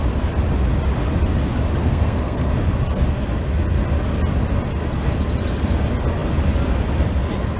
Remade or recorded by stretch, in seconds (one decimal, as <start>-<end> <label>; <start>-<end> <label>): 0.0-1.8 recorded; 1.8-2.5 remade; 2.5-7.6 recorded

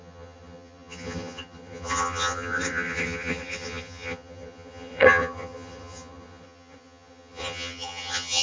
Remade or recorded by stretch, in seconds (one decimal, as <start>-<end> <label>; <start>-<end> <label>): 0.0-8.4 remade

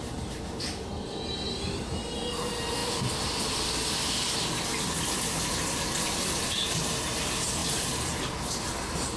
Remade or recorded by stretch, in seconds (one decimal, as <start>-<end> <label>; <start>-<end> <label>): 0.0-9.2 recorded

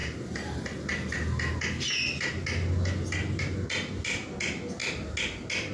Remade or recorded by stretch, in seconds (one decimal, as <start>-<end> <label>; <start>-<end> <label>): 0.0-5.7 recorded

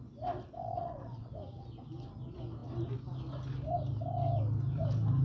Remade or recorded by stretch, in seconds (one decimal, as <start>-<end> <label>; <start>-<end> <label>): 0.0-0.6 recorded; 0.6-1.3 remade; 1.3-5.2 recorded

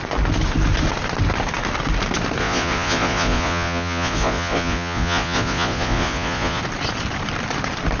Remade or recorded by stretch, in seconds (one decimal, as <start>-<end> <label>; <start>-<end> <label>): 0.0-2.4 recorded; 2.4-6.6 remade; 6.6-8.0 recorded

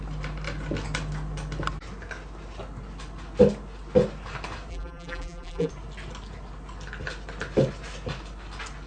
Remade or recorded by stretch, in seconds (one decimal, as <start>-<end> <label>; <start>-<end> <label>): 0.0-4.7 recorded; 4.7-5.7 remade; 5.7-8.9 recorded